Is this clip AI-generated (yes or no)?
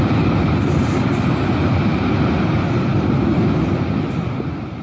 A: no